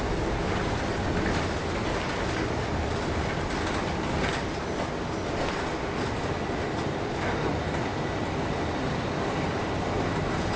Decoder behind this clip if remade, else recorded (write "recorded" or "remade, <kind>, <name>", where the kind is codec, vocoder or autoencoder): recorded